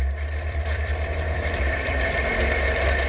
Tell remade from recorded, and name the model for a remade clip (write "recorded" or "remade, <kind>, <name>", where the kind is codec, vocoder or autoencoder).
remade, vocoder, BigVGAN v2